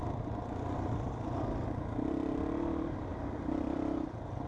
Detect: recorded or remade remade